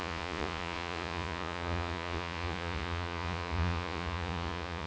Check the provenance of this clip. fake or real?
fake